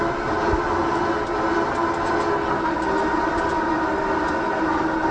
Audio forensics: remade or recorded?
recorded